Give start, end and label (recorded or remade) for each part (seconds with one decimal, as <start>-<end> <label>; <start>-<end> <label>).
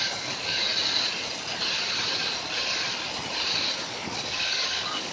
0.0-0.7 remade; 0.7-3.8 recorded; 3.8-5.1 remade